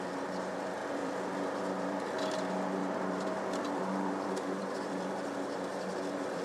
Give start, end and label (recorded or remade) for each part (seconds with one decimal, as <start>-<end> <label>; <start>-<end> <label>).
0.0-6.4 remade